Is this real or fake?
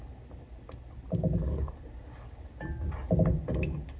real